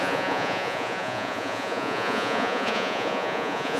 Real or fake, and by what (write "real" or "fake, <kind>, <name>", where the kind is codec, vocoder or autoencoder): fake, vocoder, Vocos